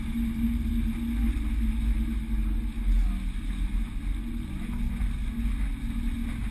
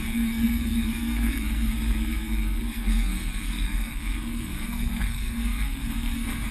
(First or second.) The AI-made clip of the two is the second